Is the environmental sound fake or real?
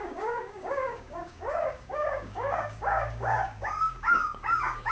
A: fake